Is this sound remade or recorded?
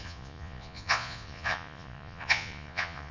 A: remade